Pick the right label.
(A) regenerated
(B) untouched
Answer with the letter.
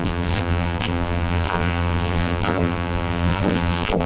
A